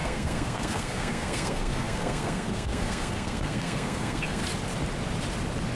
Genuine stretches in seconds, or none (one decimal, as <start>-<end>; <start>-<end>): 4.4-5.8